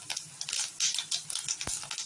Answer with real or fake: real